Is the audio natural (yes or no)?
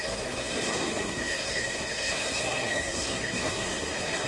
no